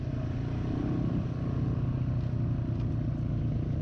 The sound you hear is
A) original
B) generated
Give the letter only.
A